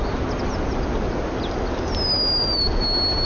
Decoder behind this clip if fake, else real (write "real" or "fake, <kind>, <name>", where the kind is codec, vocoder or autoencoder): real